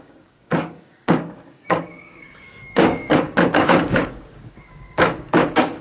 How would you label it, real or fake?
fake